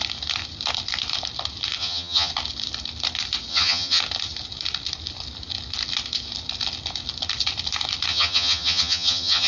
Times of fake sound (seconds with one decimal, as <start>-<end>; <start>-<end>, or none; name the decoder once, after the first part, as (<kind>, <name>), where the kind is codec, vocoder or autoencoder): 1.8-2.3 (vocoder, HiFi-GAN); 3.5-4.0; 8.1-9.5